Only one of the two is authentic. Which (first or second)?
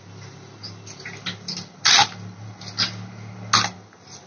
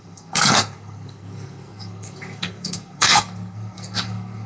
first